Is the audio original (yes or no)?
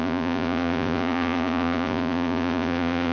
no